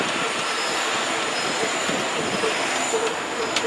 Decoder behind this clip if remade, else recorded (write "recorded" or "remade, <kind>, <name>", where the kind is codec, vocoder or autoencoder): recorded